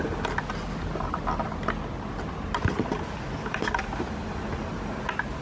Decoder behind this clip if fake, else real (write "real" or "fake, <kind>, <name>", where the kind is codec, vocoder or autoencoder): real